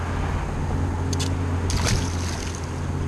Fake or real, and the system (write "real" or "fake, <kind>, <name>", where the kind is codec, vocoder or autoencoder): real